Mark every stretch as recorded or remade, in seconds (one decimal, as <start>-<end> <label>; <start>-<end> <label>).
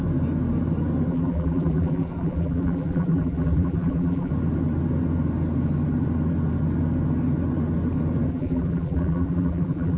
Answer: 0.0-1.1 recorded; 1.1-4.3 remade; 4.3-8.3 recorded; 8.3-10.0 remade